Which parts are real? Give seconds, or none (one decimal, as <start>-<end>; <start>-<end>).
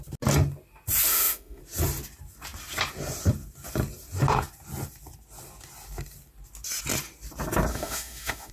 0.0-1.1; 1.6-7.7